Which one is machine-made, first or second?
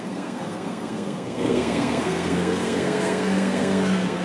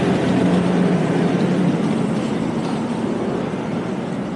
first